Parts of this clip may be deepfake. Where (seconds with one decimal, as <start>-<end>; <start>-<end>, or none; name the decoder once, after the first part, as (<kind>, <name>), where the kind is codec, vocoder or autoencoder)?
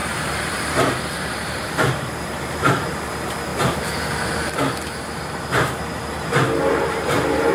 0.0-3.5 (vocoder, BigVGAN v2); 6.7-7.5